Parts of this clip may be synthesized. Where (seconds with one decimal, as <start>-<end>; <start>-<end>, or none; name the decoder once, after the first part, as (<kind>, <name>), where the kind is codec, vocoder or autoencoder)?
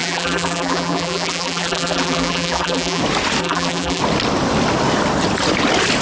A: 0.0-3.0 (vocoder, BigVGAN v2); 3.4-4.0